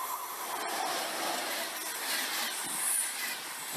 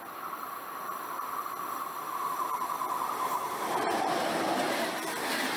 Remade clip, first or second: second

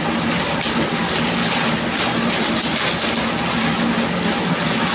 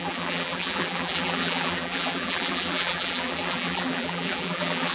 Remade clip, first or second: second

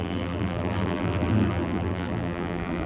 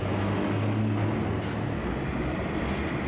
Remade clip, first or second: first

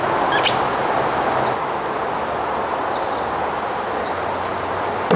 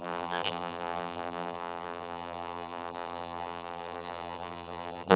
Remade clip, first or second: second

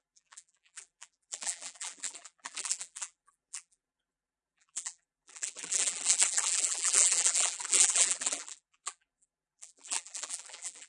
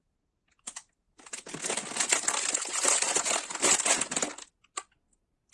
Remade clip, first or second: first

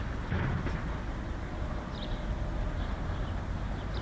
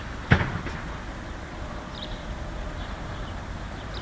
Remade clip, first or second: second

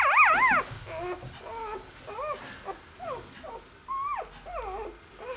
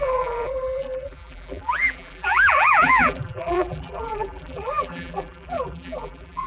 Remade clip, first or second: second